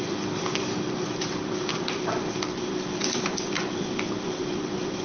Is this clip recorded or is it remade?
recorded